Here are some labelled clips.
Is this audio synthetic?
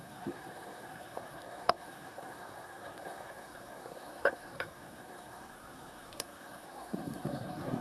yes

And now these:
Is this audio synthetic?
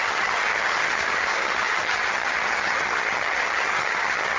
yes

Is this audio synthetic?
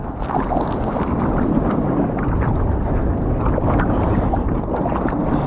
no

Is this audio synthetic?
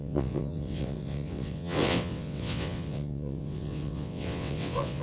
yes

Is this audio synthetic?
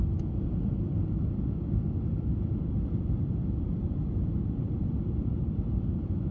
no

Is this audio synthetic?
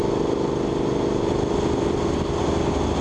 no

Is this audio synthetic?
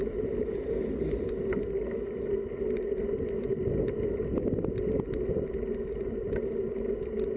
no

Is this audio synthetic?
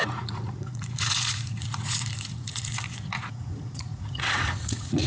yes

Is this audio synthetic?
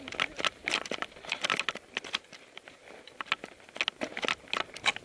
no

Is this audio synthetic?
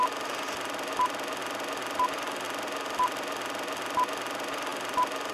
no